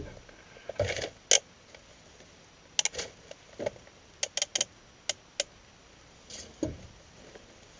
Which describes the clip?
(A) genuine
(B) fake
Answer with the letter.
A